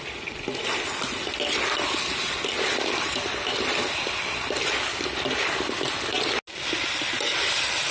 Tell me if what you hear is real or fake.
real